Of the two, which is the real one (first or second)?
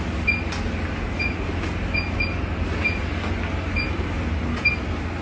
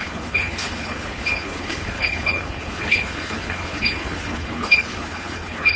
first